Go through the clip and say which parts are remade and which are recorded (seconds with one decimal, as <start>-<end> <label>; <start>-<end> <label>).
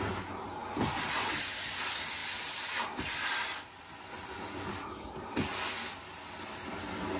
0.0-2.2 recorded; 2.2-5.2 remade; 5.2-7.2 recorded